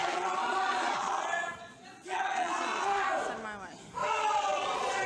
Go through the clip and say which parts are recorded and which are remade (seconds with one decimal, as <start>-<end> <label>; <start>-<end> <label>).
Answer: 0.0-3.1 remade; 3.1-4.0 recorded; 4.0-5.1 remade